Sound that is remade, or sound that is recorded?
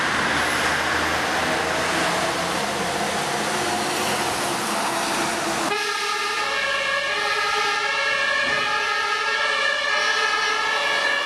recorded